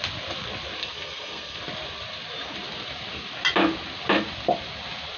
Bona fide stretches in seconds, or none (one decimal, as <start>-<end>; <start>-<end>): 0.0-0.8; 1.6-5.2